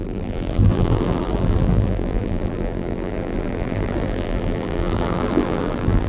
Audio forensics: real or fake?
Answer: fake